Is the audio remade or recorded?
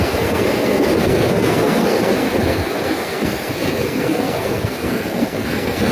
remade